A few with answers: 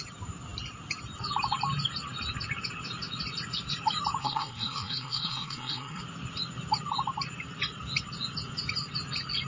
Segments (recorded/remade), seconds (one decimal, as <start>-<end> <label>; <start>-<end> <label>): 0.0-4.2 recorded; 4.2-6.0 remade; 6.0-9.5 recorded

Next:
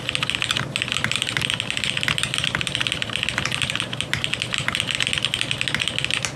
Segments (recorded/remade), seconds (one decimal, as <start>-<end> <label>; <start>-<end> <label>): 0.0-1.2 recorded; 1.2-4.3 remade; 4.3-6.4 recorded

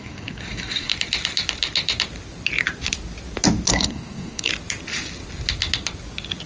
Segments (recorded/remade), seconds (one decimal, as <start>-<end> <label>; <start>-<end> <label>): 0.0-0.9 remade; 0.9-3.7 recorded; 3.7-4.5 remade; 4.5-6.5 recorded